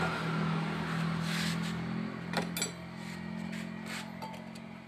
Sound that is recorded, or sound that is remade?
recorded